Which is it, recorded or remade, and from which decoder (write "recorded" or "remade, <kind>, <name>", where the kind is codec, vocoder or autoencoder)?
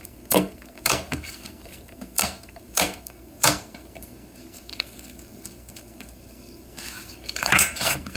remade, codec, SNAC